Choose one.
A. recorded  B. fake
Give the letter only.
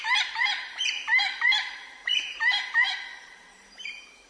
B